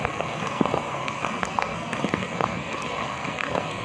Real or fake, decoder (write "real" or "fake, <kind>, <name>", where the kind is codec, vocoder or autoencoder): fake, codec, SNAC